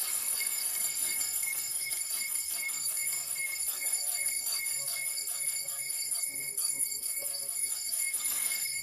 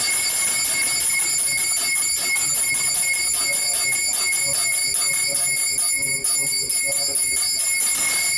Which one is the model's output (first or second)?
first